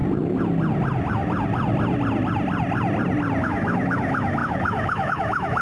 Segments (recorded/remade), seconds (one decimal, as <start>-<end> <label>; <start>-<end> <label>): 0.0-3.4 recorded; 3.4-5.6 remade